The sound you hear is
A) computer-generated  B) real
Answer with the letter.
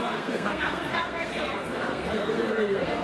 A